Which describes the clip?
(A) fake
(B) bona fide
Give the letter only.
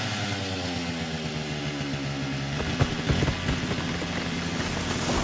B